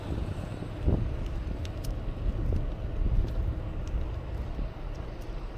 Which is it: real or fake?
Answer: real